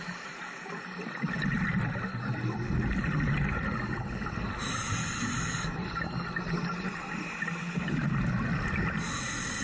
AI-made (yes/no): no